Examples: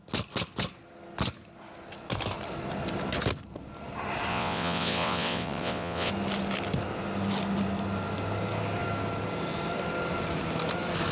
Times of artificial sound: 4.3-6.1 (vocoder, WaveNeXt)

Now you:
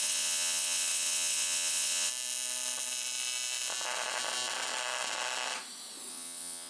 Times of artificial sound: 0.0-2.1 (vocoder, WaveNeXt); 6.1-6.7